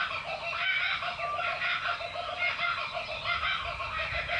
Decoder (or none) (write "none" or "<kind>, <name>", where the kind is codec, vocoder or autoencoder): none